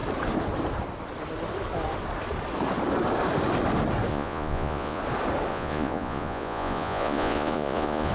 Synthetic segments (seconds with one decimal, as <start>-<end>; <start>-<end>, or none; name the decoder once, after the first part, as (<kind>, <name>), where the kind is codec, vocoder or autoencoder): 4.1-5.0 (vocoder, Vocos); 5.5-8.1

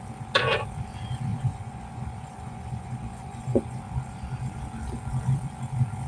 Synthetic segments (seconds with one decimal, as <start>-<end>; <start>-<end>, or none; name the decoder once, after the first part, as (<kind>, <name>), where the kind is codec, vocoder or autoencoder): 1.3-3.8 (vocoder, Vocos)